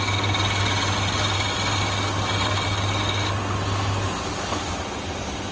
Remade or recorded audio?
recorded